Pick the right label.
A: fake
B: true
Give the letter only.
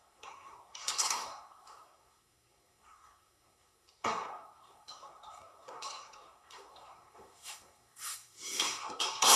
A